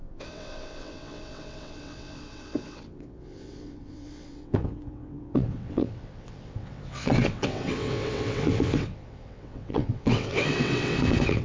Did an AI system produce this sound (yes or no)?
yes